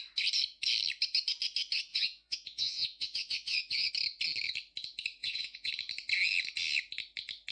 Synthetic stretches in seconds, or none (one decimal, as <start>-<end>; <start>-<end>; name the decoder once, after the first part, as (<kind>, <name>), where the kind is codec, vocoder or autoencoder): 1.9-3.9 (vocoder, Vocos); 5.2-5.7